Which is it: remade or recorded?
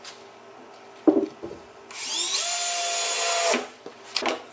recorded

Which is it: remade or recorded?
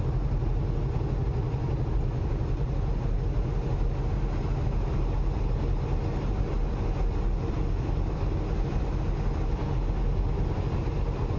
recorded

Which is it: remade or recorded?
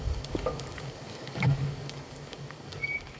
remade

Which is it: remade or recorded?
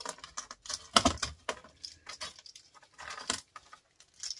recorded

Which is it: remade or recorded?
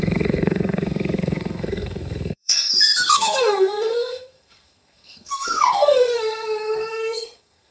remade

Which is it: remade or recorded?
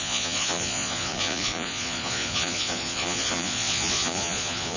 remade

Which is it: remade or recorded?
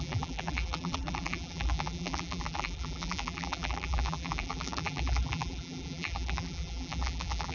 remade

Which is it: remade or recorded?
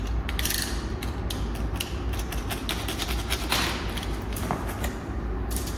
recorded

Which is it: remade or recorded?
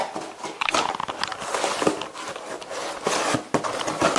recorded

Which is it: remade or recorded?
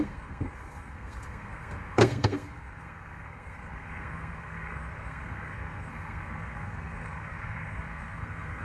remade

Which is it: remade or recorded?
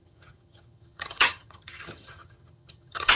remade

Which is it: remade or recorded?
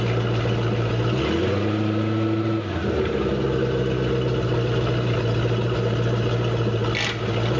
recorded